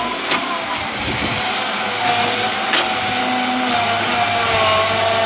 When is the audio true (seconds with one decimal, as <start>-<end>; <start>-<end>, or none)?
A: 0.0-5.3